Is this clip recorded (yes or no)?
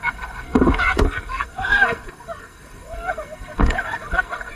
no